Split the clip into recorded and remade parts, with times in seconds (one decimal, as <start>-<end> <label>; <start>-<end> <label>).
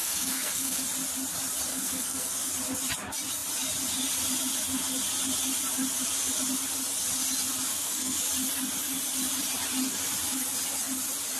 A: 0.0-0.8 remade; 0.8-1.7 recorded; 1.7-2.5 remade; 2.5-7.7 recorded; 7.7-8.2 remade; 8.2-11.4 recorded